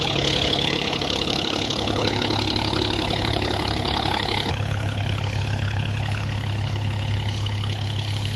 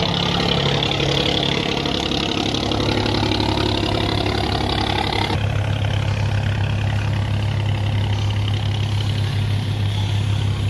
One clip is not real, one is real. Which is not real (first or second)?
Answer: first